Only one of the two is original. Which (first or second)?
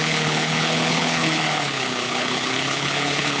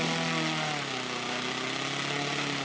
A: second